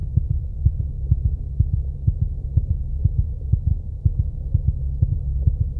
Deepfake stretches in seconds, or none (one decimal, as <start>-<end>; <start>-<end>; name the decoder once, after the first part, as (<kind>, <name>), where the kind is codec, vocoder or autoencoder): 0.0-0.8 (vocoder, BigVGAN v2)